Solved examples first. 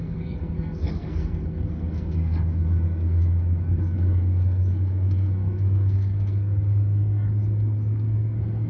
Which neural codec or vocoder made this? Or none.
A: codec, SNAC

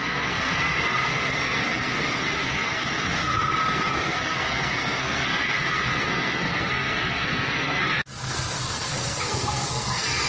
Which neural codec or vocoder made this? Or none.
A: codec, SNAC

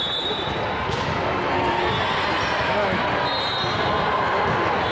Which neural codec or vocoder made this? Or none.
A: none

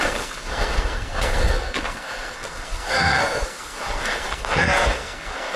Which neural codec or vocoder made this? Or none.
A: codec, SNAC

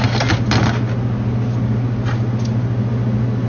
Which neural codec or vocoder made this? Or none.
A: none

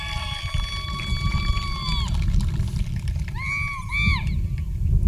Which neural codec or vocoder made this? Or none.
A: none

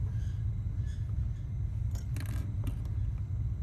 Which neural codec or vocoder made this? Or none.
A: none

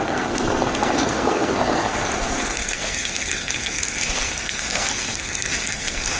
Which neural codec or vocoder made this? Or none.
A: codec, SNAC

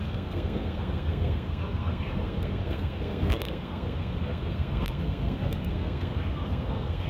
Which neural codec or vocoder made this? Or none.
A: codec, SNAC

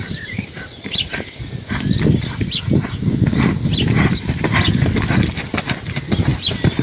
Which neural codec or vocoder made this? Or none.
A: none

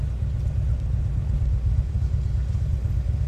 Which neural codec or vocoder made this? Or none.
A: none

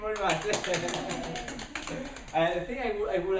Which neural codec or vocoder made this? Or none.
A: none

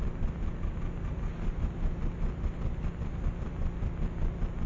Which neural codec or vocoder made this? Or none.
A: none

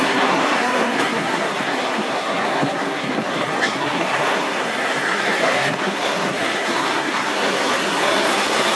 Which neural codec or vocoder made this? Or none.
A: codec, SNAC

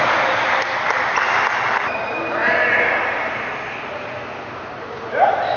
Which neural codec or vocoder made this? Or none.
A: none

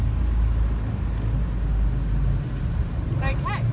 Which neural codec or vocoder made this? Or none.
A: none